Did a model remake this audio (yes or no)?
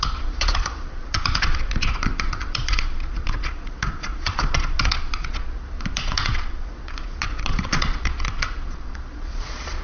yes